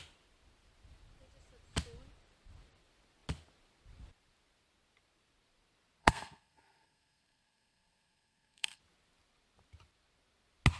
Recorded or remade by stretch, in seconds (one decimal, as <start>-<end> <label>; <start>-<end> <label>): 0.0-6.0 recorded; 6.0-8.8 remade; 8.8-10.8 recorded